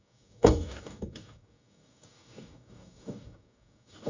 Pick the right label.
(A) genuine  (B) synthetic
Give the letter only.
B